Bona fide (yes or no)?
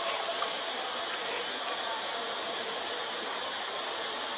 yes